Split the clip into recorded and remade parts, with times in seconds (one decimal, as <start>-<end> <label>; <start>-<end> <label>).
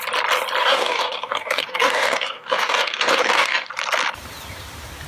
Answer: 0.0-0.6 recorded; 0.6-3.7 remade; 3.7-5.1 recorded